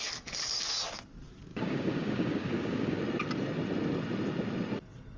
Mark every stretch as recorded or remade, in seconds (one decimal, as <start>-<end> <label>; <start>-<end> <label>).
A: 0.0-1.5 recorded; 1.5-3.0 remade; 3.0-5.2 recorded